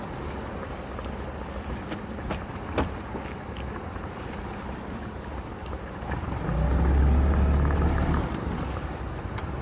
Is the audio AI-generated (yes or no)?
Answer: no